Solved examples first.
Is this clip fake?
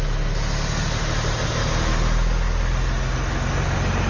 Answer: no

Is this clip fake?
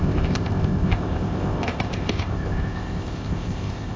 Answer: yes